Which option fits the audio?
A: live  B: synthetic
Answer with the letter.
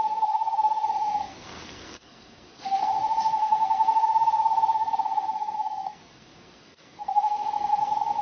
B